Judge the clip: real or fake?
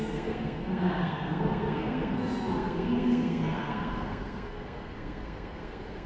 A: fake